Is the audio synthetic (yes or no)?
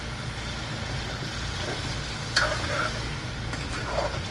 no